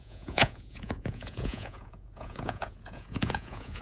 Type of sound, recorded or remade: remade